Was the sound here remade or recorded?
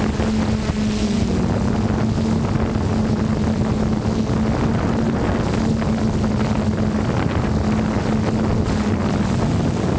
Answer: recorded